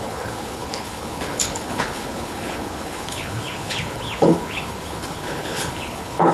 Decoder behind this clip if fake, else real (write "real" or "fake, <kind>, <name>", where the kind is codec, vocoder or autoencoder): fake, codec, HILCodec